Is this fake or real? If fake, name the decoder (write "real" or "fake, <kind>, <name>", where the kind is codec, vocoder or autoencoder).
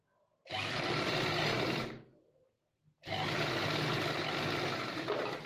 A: real